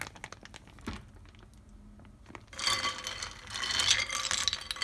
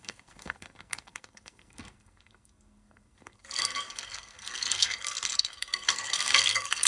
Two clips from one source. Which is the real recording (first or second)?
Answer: first